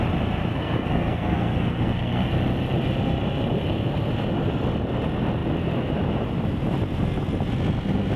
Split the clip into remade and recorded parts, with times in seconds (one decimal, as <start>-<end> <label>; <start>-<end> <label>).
0.0-0.5 recorded; 0.5-2.3 remade; 2.3-8.2 recorded